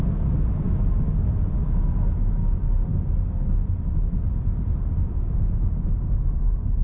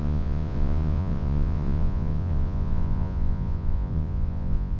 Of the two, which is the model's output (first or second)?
second